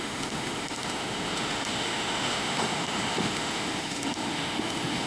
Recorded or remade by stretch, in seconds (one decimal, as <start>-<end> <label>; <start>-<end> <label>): 0.0-5.1 remade